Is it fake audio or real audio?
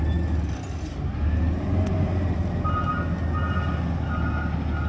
real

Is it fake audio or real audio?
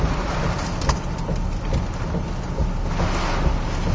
real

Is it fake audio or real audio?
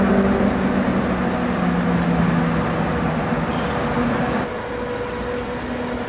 real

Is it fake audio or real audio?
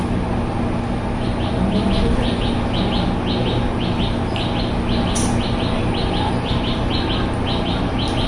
real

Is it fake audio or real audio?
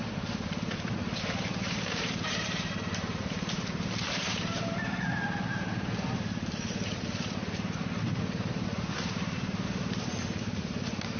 fake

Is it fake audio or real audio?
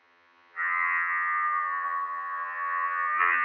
fake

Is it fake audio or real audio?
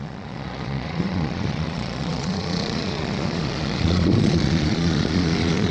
fake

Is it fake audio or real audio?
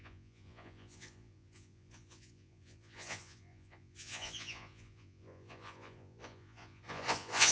fake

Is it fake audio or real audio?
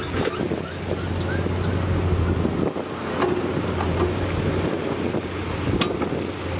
real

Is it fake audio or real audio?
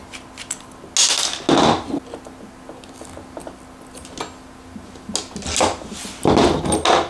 real